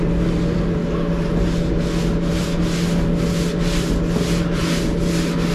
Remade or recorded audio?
recorded